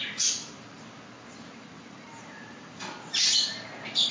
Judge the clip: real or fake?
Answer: real